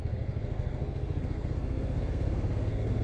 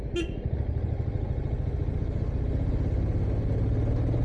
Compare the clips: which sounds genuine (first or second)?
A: second